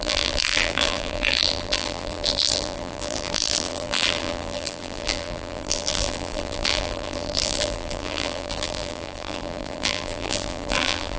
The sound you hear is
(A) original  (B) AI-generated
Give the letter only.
B